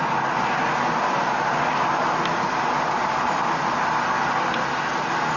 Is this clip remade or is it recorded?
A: recorded